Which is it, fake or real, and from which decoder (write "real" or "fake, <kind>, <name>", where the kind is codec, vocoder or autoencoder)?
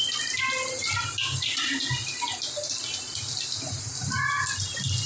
real